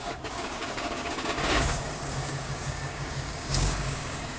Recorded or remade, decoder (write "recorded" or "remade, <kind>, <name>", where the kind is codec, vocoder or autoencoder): remade, codec, DAC